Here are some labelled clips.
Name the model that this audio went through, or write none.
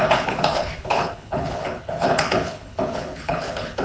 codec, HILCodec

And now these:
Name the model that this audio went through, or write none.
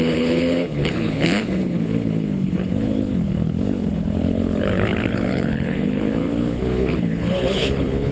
codec, HILCodec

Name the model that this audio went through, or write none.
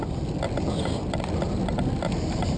none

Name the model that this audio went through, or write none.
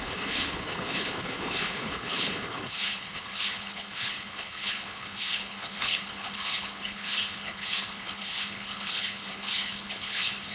codec, HILCodec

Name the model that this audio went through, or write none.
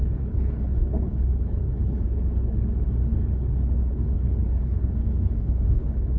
codec, HILCodec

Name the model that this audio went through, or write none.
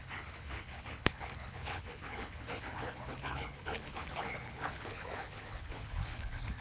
codec, HILCodec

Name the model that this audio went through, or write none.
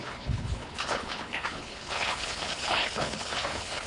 codec, HILCodec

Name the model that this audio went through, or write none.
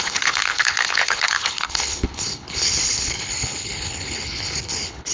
codec, HILCodec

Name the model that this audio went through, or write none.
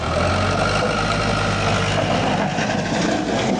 none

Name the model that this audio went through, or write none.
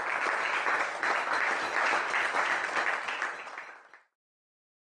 none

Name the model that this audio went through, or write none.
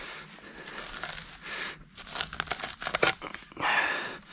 none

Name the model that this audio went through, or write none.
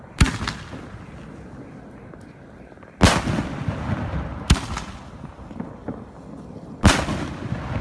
none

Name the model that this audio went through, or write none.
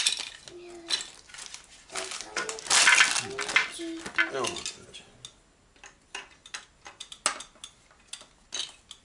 none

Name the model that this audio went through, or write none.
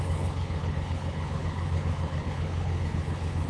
codec, HILCodec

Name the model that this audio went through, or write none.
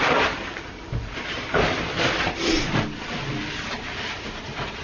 none